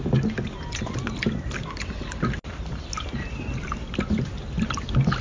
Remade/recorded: recorded